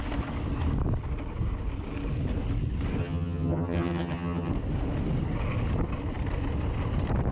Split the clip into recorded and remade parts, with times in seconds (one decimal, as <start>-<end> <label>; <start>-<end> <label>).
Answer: 0.0-3.0 recorded; 3.0-4.5 remade; 4.5-7.3 recorded

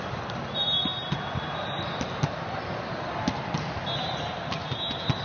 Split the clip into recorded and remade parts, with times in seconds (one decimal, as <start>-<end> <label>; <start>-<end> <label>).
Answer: 0.0-5.2 recorded

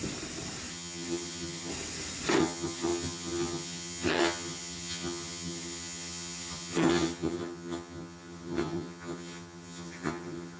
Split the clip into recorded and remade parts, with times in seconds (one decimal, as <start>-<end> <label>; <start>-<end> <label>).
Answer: 0.0-0.7 recorded; 0.7-1.7 remade; 1.7-2.4 recorded; 2.4-10.6 remade

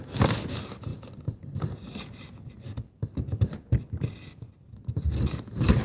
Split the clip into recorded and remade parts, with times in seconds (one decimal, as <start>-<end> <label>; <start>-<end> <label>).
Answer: 0.0-5.8 recorded

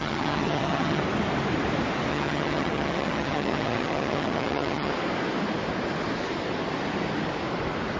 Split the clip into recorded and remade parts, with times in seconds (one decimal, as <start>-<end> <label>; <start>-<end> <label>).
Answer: 0.0-1.0 remade; 1.0-2.1 recorded; 2.1-4.9 remade; 4.9-8.0 recorded

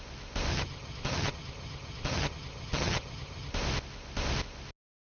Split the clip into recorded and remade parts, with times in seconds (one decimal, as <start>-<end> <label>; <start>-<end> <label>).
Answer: 0.0-0.5 recorded; 0.5-3.5 remade; 3.5-5.0 recorded